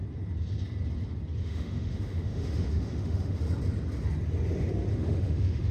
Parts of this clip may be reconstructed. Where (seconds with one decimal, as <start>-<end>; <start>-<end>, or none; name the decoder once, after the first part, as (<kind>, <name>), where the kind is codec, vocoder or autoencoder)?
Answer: 1.4-3.4 (autoencoder, DAC-VAE); 4.9-5.7